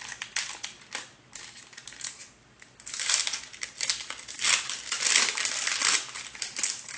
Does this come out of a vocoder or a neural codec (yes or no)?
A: no